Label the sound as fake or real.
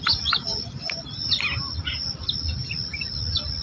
real